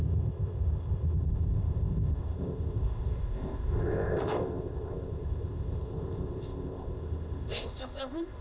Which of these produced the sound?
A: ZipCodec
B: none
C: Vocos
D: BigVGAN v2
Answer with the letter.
A